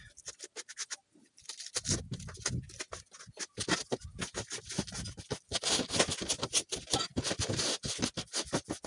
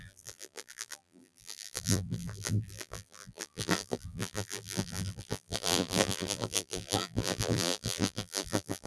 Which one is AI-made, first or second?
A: second